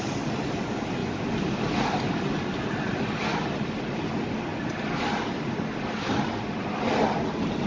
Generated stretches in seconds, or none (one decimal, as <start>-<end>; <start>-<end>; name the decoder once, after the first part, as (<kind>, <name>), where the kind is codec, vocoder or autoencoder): none